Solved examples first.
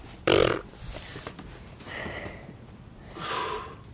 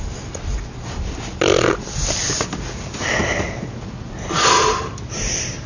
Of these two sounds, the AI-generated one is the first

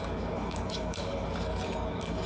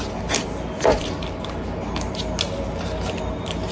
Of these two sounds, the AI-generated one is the first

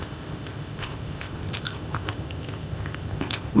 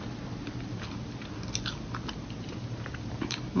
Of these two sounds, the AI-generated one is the first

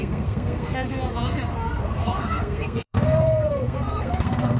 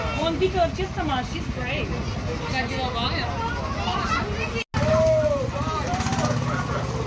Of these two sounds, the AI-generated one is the first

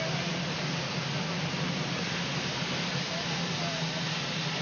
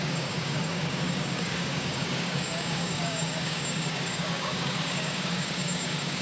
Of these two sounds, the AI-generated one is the second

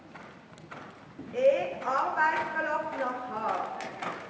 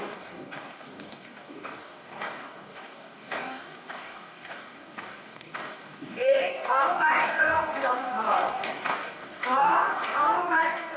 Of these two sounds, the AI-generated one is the second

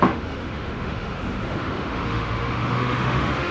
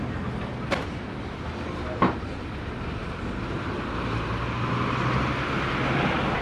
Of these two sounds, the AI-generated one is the first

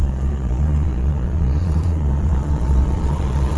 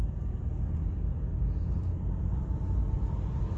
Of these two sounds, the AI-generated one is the first